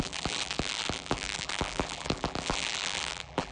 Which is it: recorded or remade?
remade